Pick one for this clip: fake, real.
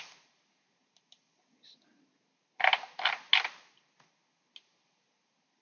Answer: real